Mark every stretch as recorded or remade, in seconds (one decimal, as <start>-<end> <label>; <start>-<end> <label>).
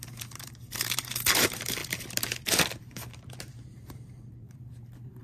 0.0-1.8 remade; 1.8-2.8 recorded; 2.8-5.2 remade